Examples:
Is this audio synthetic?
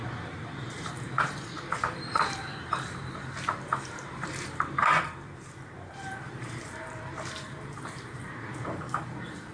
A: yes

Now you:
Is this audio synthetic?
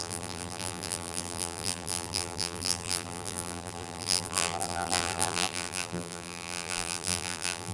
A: yes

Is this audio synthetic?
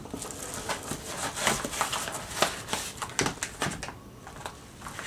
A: no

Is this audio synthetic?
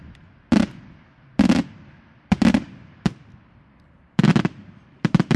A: yes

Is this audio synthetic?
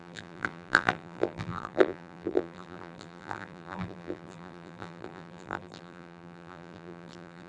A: yes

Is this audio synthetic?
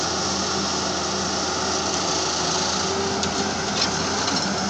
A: no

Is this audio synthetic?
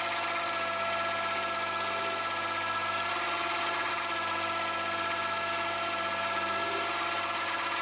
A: no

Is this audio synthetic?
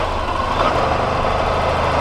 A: no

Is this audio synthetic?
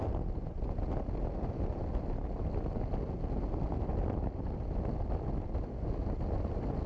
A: no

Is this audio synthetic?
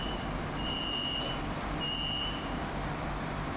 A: yes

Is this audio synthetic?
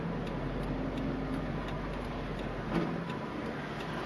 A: no